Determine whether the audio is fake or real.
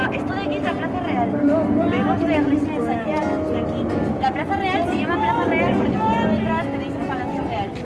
real